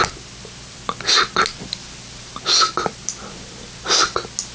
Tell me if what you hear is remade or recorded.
recorded